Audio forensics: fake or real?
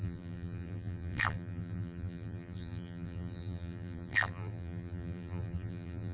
fake